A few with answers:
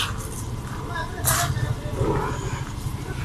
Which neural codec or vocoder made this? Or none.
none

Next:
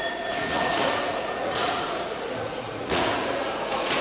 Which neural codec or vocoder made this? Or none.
vocoder, Vocos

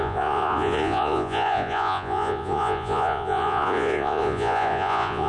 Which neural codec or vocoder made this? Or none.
vocoder, Vocos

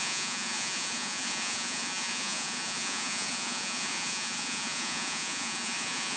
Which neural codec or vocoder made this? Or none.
vocoder, Vocos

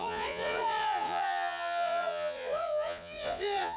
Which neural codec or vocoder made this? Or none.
vocoder, Vocos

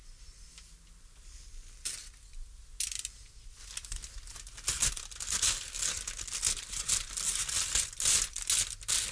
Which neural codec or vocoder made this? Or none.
none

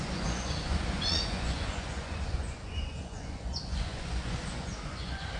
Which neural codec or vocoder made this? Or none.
vocoder, Vocos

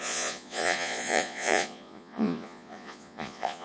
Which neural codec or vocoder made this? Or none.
vocoder, Vocos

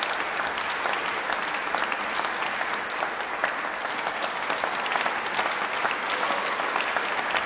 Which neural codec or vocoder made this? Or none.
none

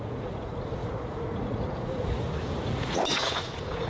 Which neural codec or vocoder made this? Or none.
vocoder, Vocos